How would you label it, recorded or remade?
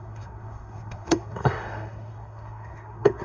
remade